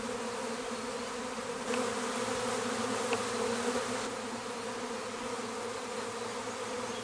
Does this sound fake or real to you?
real